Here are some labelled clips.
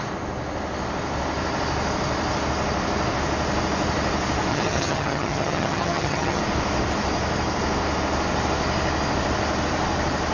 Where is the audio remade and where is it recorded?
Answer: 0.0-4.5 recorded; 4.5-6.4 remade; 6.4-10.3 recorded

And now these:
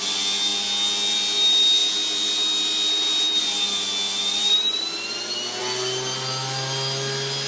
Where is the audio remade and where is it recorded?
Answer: 0.0-7.5 recorded

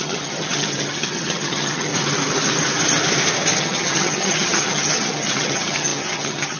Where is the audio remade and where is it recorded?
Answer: 0.0-1.9 remade; 1.9-3.6 recorded; 3.6-6.6 remade

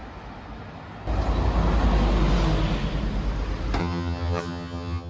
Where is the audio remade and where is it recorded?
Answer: 0.0-3.8 recorded; 3.8-5.1 remade

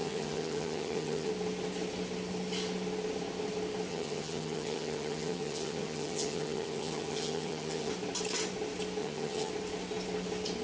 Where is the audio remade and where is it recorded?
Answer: 0.0-1.3 remade; 1.3-3.9 recorded; 3.9-7.9 remade; 7.9-9.0 recorded; 9.0-9.5 remade; 9.5-10.6 recorded